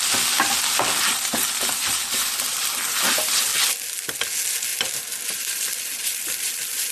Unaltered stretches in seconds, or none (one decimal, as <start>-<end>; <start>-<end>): 0.0-6.9